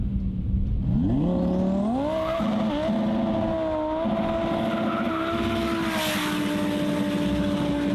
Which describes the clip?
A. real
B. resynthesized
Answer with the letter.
A